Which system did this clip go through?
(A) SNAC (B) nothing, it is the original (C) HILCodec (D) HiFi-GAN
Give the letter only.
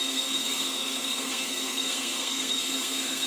A